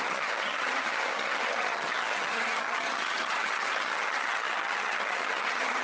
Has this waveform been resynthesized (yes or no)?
yes